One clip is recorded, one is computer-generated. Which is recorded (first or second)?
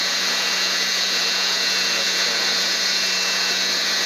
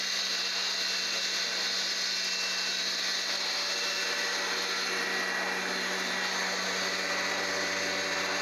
second